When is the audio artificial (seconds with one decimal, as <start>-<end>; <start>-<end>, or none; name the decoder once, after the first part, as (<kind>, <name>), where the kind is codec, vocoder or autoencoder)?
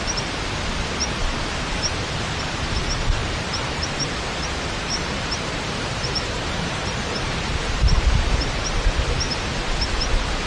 3.2-7.9 (vocoder, BigVGAN v2)